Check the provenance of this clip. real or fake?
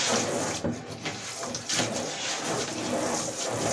real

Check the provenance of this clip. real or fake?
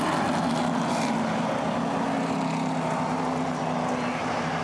real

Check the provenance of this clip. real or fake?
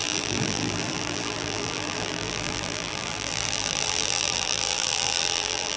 fake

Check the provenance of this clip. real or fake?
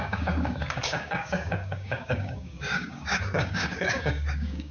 fake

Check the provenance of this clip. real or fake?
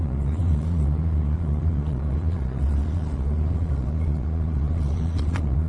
fake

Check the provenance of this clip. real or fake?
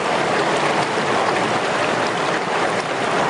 real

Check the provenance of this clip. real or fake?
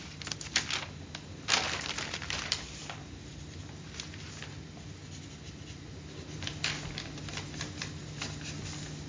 real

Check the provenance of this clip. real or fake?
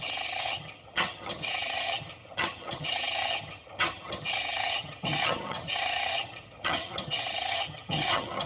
fake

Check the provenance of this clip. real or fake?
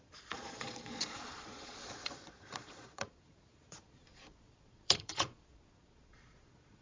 fake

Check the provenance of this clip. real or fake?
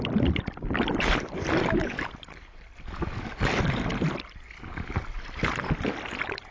real